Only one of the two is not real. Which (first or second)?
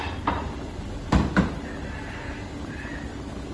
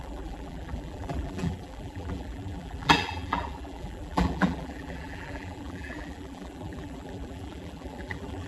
second